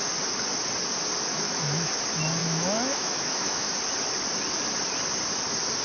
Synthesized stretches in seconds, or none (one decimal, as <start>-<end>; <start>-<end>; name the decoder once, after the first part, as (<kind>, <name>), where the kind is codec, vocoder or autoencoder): 1.3-1.9 (autoencoder, DAC-VAE); 2.4-3.8